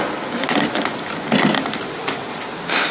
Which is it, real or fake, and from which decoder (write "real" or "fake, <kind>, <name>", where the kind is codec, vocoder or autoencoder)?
real